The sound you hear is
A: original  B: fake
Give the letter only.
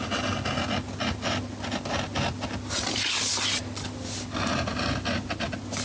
A